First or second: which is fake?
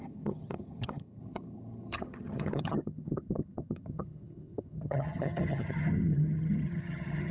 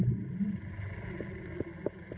first